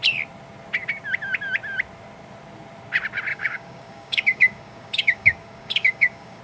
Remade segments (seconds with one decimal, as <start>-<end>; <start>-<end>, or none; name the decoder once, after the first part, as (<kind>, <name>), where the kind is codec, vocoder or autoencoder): 3.3-6.4 (codec, DAC)